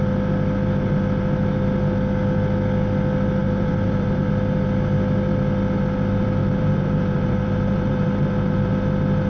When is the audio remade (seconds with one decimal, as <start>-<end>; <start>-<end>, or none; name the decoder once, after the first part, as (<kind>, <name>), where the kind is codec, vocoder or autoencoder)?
3.4-4.3 (vocoder, BigVGAN v2); 6.4-8.7